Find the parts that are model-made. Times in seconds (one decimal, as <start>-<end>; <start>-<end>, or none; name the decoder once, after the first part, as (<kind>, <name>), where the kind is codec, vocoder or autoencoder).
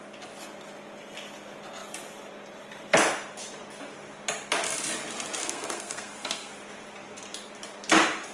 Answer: 5.4-6.5 (codec, SNAC)